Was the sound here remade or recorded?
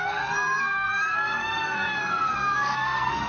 remade